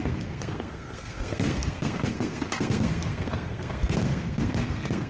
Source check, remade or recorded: remade